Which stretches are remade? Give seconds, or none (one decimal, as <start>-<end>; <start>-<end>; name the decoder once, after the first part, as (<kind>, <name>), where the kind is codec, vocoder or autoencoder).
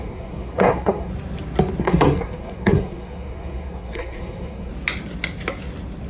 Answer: 0.0-1.1 (codec, SNAC); 1.8-4.7